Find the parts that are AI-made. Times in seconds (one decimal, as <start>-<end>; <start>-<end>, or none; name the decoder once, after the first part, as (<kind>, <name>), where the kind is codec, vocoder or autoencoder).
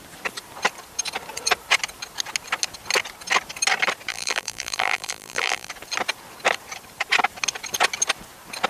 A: 4.1-5.7 (vocoder, BigVGAN v2)